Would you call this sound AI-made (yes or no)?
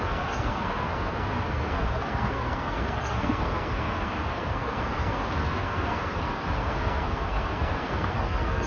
yes